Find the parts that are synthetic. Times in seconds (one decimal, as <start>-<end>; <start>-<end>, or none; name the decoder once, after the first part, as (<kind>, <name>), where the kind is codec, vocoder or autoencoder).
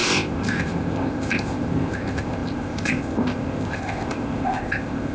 0.0-5.1 (codec, ZipCodec)